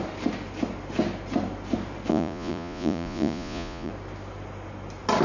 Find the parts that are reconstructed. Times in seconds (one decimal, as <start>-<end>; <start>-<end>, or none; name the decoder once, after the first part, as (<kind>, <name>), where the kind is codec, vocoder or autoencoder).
2.1-3.9 (vocoder, Vocos)